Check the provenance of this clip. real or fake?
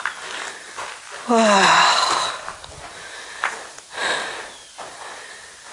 real